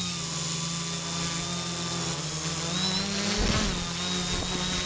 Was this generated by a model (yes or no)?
no